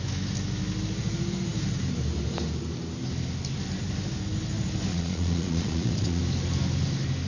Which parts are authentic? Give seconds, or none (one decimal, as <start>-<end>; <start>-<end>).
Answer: 0.0-4.9; 6.2-7.3